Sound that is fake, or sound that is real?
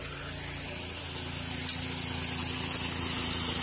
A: real